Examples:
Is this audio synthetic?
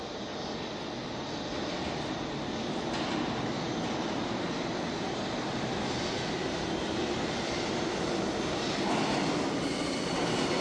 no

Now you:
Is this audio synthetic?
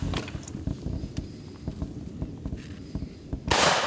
no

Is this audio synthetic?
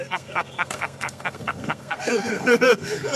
yes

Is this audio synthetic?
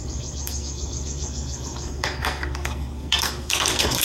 yes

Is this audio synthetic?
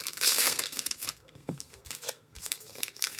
yes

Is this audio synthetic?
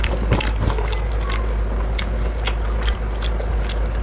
no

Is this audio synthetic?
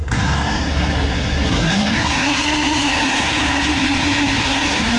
yes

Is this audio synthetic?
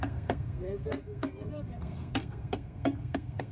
yes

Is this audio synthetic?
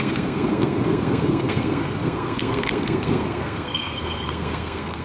yes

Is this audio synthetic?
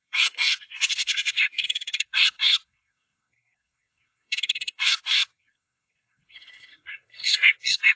yes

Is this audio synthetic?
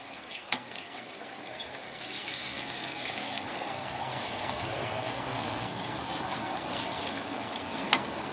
yes